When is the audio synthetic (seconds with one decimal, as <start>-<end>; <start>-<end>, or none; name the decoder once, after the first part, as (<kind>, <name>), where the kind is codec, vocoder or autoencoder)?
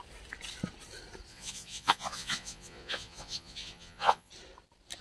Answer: 1.3-4.3 (vocoder, Vocos)